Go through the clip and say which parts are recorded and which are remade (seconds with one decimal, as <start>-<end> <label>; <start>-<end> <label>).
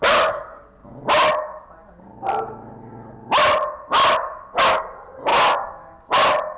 0.0-6.6 recorded